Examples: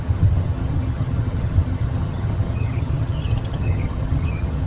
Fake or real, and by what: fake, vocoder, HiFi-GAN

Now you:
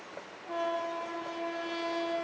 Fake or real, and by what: real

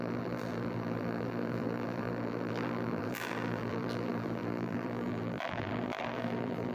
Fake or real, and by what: fake, vocoder, BigVGAN v2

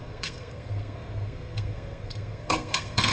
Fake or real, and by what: fake, codec, SNAC